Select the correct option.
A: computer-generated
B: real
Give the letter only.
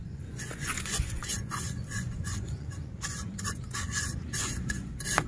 A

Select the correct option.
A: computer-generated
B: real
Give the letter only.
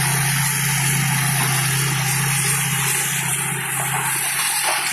B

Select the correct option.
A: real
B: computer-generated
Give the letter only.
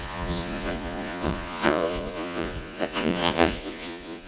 B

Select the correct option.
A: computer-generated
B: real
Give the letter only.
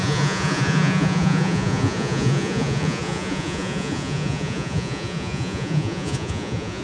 A